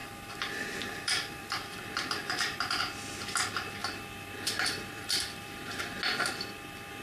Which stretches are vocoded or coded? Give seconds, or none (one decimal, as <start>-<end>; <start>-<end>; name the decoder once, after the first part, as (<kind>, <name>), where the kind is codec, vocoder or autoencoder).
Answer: 0.0-2.8 (vocoder, BigVGAN v2); 3.8-5.8